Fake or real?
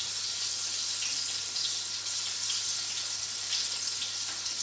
real